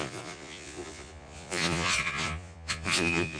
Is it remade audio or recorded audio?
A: remade